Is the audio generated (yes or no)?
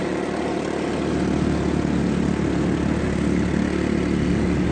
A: no